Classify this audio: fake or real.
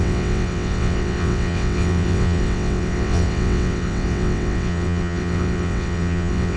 fake